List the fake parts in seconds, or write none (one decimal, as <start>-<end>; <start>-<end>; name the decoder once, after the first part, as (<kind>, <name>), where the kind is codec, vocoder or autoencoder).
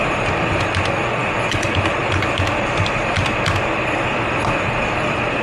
none